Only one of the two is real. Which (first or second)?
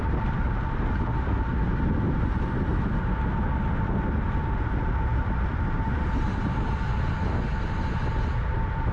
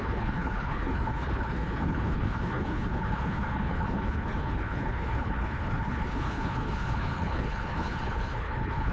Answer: first